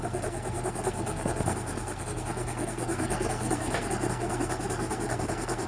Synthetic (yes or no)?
yes